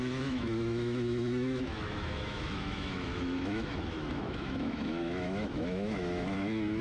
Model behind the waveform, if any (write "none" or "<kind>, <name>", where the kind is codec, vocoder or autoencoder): autoencoder, DAC-VAE